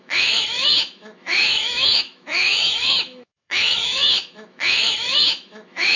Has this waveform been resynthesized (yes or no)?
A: yes